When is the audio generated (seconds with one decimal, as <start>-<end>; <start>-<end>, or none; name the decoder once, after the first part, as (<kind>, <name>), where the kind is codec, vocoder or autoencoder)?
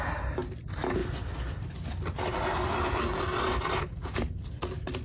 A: none